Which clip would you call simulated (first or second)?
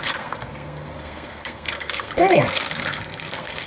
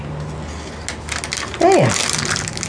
first